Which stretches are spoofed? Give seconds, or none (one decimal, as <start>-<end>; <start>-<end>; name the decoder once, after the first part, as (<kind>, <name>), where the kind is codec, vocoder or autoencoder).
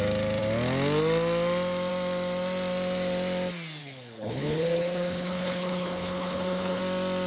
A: 3.8-6.8 (codec, HILCodec)